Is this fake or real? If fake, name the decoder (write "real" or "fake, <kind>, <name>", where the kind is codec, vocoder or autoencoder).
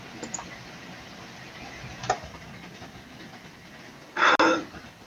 real